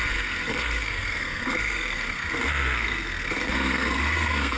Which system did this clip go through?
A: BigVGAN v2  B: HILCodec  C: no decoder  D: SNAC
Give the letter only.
D